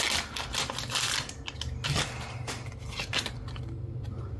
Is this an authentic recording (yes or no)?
yes